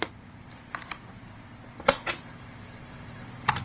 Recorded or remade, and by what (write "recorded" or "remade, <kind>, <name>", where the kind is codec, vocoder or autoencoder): recorded